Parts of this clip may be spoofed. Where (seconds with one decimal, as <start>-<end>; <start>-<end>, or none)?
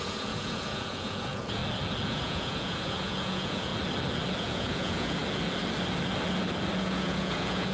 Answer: 0.0-1.6; 2.1-3.7; 4.4-5.2; 6.8-7.7